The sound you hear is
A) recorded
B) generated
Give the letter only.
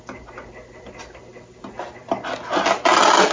A